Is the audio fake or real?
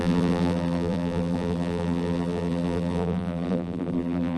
fake